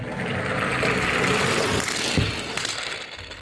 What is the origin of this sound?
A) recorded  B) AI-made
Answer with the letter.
A